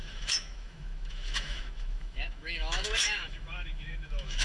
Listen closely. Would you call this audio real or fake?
fake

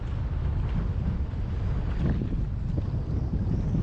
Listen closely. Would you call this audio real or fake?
real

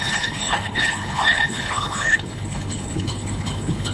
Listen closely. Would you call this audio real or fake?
fake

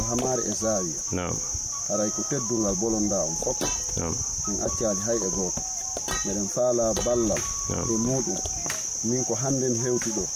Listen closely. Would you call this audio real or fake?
real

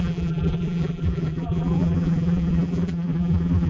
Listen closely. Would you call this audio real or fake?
fake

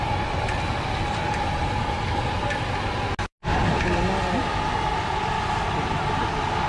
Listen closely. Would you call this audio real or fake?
real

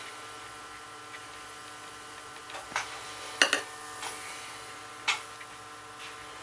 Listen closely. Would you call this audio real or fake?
real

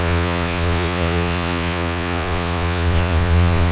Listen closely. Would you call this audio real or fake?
fake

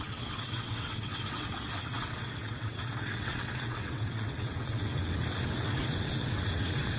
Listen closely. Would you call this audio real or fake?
fake